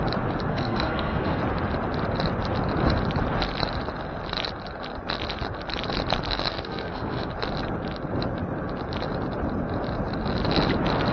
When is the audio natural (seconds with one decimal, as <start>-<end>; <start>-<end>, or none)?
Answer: 0.0-0.5; 1.4-6.5; 7.3-11.1